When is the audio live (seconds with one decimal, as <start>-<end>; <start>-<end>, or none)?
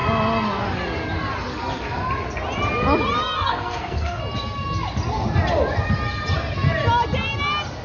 0.0-3.2; 4.2-7.8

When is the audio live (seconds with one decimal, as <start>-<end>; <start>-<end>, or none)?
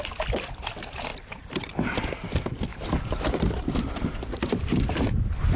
0.0-1.1; 1.6-2.7; 4.6-5.6